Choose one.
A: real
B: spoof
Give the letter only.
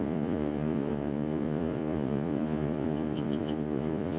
B